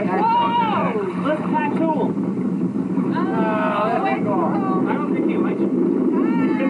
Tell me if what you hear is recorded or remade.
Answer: recorded